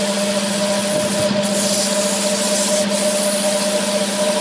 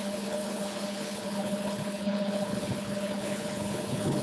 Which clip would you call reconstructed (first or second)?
second